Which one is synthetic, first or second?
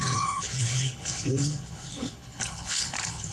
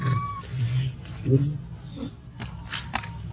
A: first